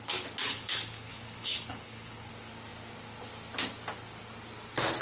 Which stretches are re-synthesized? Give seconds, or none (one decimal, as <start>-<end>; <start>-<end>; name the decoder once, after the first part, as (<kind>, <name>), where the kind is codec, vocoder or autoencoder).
0.4-2.3 (codec, HILCodec)